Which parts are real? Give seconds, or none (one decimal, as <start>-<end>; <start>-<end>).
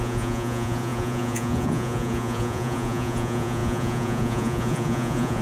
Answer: none